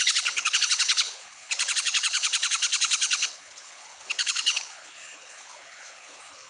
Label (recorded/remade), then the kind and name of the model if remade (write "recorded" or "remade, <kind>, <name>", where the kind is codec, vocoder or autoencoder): remade, codec, HILCodec